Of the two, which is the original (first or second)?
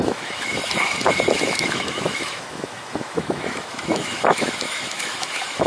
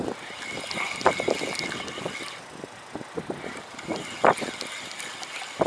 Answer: second